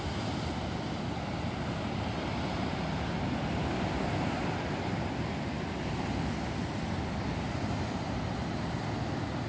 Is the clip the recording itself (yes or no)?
yes